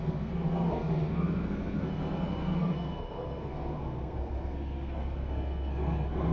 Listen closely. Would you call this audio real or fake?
fake